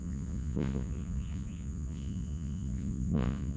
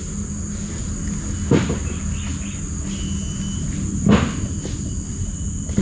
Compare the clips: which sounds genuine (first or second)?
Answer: second